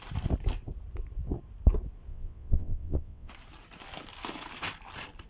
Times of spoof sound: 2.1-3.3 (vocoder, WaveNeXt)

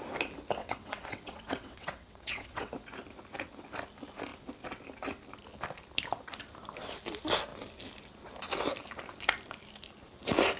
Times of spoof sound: 0.6-2.7 (vocoder, WaveNeXt)

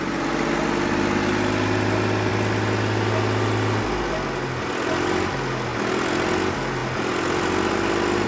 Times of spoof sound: none

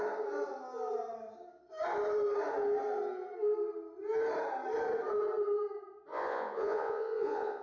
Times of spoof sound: 6.1-7.6 (vocoder, Vocos)

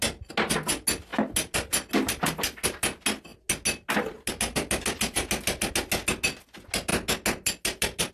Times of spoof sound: none

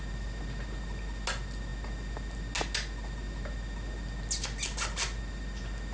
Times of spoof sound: none

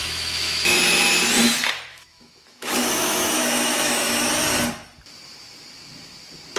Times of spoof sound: 0.0-0.8 (autoencoder, DAC-VAE); 1.9-4.3